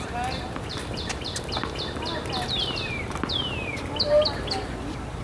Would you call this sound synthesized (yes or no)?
no